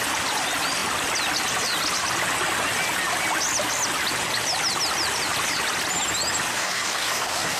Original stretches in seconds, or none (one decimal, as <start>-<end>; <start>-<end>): 0.0-6.5